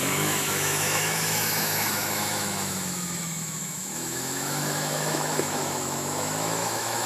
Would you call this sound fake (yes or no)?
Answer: yes